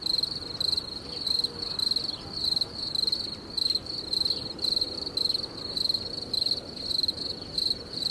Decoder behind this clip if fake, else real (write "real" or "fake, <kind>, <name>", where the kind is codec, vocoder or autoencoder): real